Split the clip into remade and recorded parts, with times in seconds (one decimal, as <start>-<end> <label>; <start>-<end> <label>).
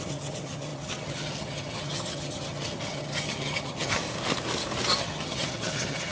0.0-4.0 remade; 4.0-5.0 recorded; 5.0-6.1 remade